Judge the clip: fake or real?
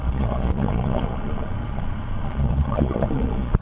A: fake